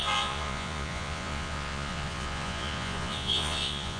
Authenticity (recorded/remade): remade